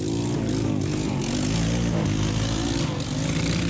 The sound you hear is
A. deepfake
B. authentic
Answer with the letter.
B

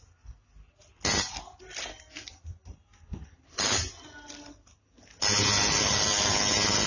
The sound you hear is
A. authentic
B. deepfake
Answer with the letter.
A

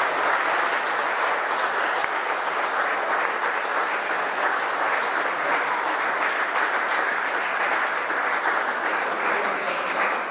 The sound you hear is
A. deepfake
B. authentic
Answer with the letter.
B